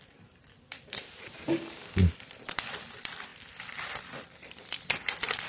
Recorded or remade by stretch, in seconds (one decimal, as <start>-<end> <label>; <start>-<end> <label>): 0.0-1.0 remade; 1.0-1.5 recorded; 1.5-5.5 remade